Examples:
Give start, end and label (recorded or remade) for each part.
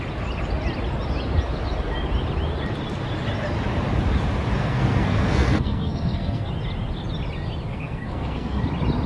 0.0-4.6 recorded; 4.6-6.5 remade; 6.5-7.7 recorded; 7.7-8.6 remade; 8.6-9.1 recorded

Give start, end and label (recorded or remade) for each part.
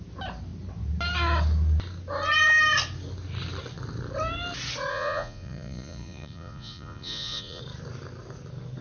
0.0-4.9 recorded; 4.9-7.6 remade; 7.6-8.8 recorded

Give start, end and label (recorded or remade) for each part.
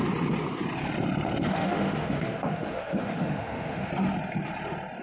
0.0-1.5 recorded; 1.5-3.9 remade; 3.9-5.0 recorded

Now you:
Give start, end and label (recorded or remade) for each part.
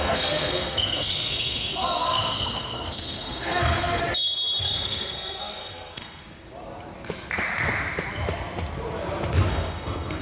0.0-4.0 remade; 4.0-4.6 recorded; 4.6-6.2 remade; 6.2-9.5 recorded; 9.5-10.2 remade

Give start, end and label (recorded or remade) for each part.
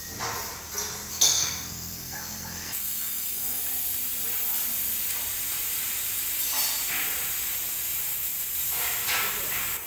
0.0-1.1 recorded; 1.1-3.6 remade; 3.6-9.9 recorded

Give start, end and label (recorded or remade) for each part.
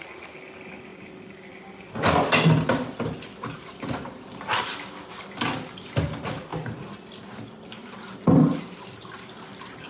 0.0-9.9 recorded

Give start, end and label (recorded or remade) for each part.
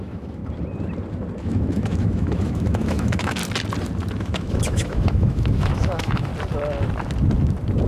0.0-0.4 remade; 0.4-1.4 recorded; 1.4-3.4 remade; 3.4-4.2 recorded; 4.2-6.3 remade; 6.3-7.9 recorded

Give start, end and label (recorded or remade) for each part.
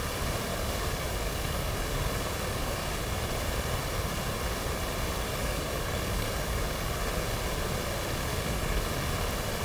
0.0-0.5 recorded; 0.5-3.2 remade; 3.2-5.4 recorded; 5.4-6.9 remade; 6.9-8.3 recorded; 8.3-8.9 remade; 8.9-9.6 recorded